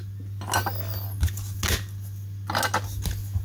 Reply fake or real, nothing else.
real